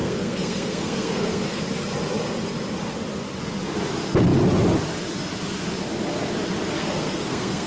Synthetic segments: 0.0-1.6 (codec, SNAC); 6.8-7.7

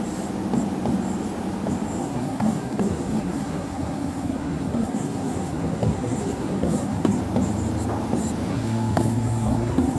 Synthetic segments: 2.0-7.2 (codec, SNAC); 8.5-10.0

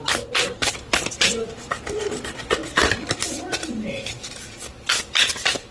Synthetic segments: none

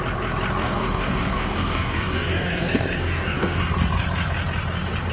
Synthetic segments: 0.6-3.6 (codec, DAC)

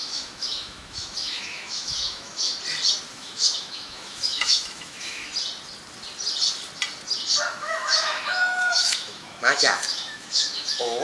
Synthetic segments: 0.0-2.5 (autoencoder, DAC-VAE); 3.1-5.3; 7.5-11.0

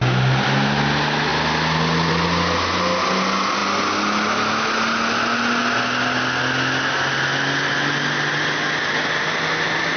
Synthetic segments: none